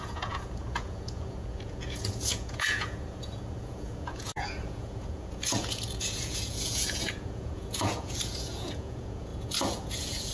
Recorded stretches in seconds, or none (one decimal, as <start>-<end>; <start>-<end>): none